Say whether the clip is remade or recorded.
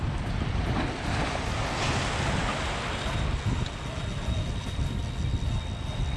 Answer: recorded